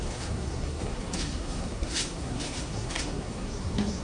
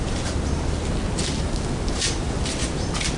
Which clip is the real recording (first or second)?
second